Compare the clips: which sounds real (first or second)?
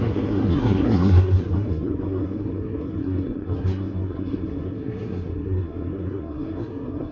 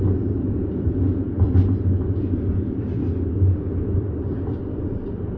second